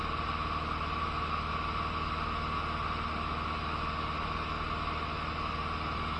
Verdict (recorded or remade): recorded